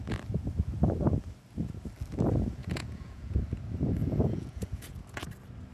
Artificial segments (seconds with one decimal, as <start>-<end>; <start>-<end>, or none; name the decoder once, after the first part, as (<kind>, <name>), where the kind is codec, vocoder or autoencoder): 2.6-3.4 (vocoder, Vocos); 4.0-5.2